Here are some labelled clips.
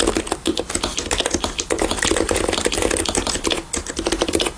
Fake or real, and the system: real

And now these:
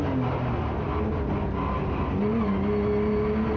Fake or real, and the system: real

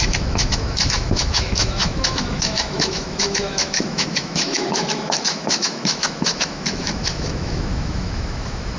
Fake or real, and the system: fake, autoencoder, DAC-VAE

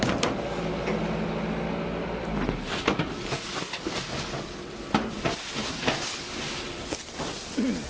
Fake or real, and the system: real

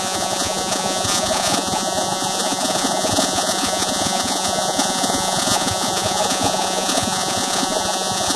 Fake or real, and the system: fake, vocoder, Vocos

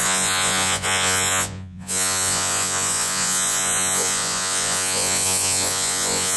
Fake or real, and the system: fake, vocoder, Vocos